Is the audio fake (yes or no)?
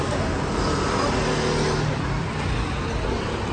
no